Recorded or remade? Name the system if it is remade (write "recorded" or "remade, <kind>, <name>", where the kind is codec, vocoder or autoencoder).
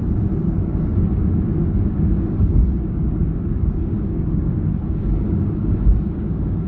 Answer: remade, codec, DAC